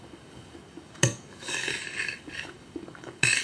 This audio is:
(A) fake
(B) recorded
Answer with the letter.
A